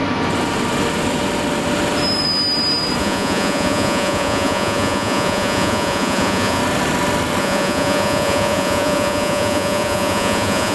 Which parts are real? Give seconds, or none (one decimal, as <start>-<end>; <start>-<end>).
0.0-3.0; 6.6-7.4